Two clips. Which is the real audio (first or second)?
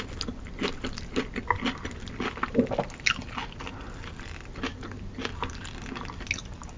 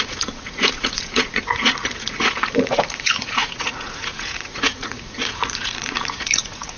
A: first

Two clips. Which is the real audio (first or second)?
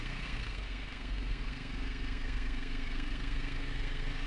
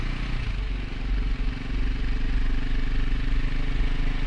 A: second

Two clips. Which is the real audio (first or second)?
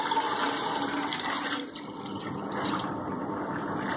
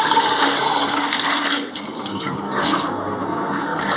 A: first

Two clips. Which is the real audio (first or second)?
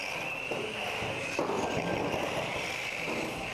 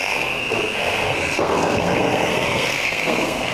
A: first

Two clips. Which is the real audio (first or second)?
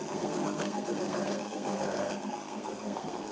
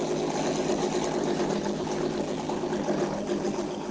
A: second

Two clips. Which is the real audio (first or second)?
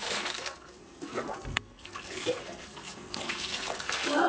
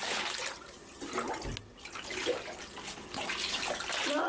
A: second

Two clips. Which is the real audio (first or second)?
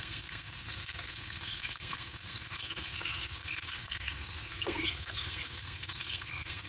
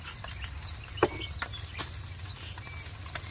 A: second